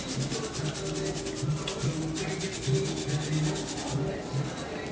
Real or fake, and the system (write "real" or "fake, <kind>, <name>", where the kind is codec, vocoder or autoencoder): real